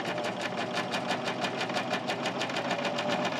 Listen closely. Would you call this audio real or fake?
real